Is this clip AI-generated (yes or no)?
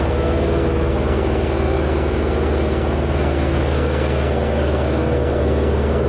yes